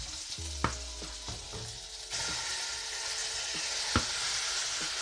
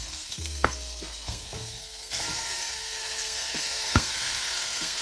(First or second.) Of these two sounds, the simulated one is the second